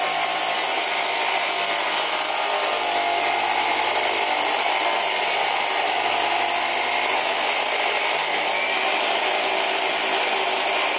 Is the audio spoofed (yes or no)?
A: no